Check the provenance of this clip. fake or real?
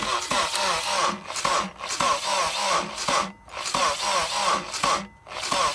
real